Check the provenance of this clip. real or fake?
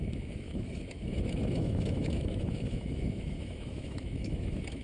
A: fake